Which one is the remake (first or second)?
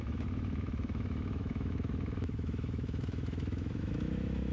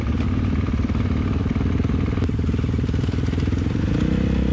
first